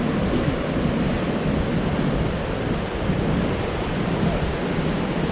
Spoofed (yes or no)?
no